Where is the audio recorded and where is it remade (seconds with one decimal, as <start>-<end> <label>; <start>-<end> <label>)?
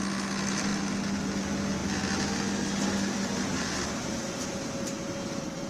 0.0-5.7 recorded